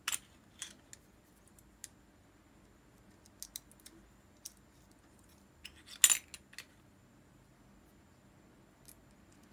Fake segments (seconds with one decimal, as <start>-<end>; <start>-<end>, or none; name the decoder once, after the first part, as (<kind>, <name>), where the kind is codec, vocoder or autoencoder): none